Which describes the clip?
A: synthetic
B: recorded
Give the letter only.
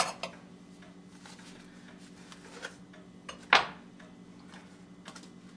B